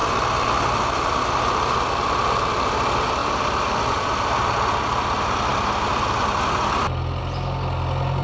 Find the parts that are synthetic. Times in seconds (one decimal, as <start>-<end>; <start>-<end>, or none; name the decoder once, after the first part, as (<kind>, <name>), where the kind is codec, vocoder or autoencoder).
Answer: 0.0-1.0 (vocoder, BigVGAN v2); 3.2-4.8